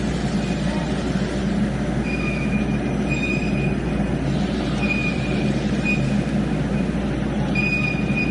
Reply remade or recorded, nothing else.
recorded